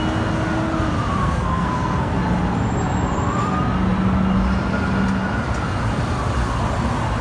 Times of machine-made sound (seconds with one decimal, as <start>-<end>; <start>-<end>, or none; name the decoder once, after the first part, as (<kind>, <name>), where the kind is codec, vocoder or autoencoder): 1.2-2.2 (codec, SNAC)